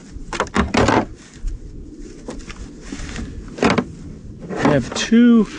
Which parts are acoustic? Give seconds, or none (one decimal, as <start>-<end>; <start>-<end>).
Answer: 0.0-5.6